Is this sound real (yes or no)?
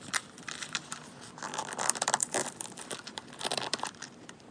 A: no